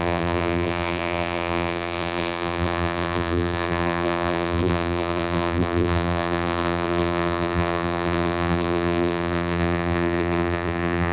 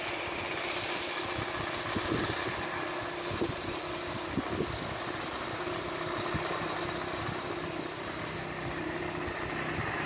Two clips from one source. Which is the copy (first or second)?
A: first